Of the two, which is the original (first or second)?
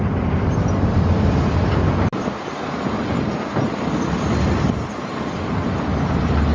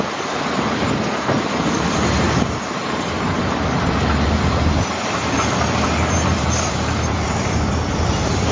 first